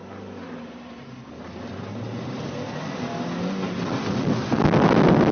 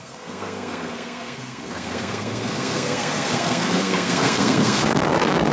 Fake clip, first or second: second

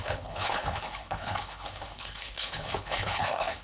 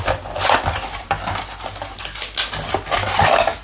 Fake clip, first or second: first